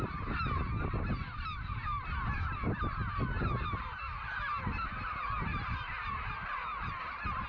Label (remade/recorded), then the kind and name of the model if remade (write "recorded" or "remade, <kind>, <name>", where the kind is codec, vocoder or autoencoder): recorded